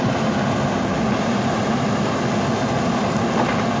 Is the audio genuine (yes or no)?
yes